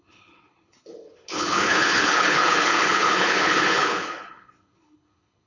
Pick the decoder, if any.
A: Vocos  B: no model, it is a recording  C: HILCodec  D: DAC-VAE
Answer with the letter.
C